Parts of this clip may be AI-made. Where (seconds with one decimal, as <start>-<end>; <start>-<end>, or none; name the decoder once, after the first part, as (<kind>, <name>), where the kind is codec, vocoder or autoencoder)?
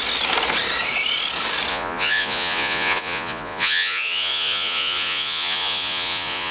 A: 1.7-6.5 (vocoder, Vocos)